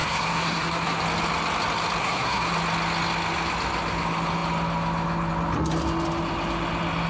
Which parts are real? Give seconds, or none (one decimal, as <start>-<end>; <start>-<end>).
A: 1.0-2.0; 2.5-7.1

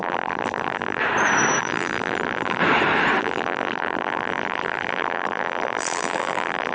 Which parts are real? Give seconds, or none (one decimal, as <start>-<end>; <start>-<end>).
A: 1.0-1.6; 2.6-3.2

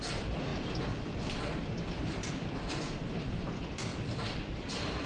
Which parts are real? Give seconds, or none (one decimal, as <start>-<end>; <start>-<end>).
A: 0.0-5.1

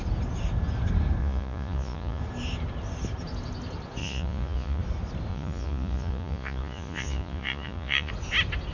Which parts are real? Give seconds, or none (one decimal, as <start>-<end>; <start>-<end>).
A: 0.0-1.2; 2.2-4.0; 4.8-5.3; 8.1-8.7

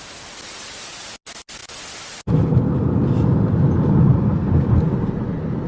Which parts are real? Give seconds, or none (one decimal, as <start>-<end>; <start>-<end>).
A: 0.0-5.7